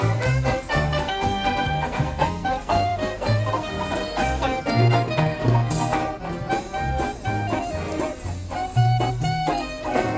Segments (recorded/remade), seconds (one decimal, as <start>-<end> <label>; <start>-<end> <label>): 0.0-6.0 remade; 6.0-9.1 recorded; 9.1-10.2 remade